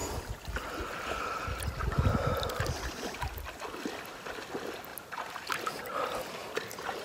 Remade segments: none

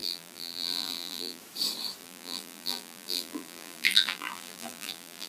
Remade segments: 0.0-1.4 (vocoder, BigVGAN v2); 2.0-5.3

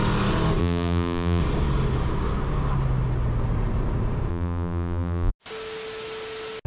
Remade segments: 0.6-1.4 (vocoder, BigVGAN v2); 4.3-5.3

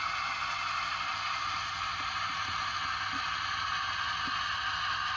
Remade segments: none